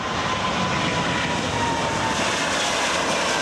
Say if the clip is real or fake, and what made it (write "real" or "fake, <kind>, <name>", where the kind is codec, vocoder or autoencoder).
real